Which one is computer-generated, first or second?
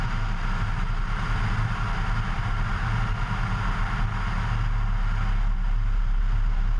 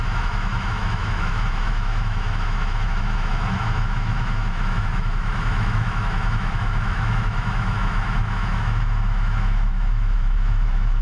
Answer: second